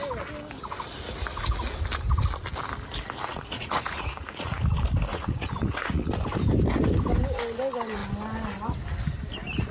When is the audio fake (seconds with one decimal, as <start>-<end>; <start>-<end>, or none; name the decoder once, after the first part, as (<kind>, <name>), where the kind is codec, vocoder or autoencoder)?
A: 3.3-4.5 (vocoder, Vocos); 5.1-6.1